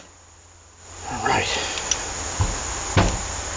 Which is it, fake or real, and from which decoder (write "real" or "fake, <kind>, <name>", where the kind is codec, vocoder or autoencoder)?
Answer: real